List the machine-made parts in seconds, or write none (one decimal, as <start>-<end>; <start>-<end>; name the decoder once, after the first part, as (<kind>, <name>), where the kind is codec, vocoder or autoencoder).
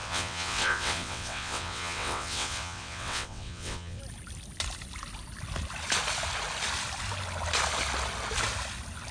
0.0-4.0 (vocoder, WaveNeXt)